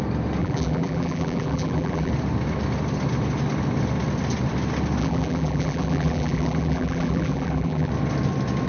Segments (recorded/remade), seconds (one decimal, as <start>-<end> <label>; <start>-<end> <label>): 0.0-0.4 recorded; 0.4-2.1 remade; 2.1-5.0 recorded; 5.0-7.9 remade; 7.9-8.7 recorded